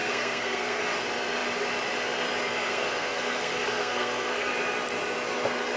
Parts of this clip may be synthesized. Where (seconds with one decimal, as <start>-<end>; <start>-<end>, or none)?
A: 0.0-0.8; 2.5-4.5